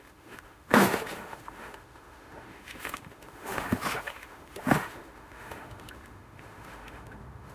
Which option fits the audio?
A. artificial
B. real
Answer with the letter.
A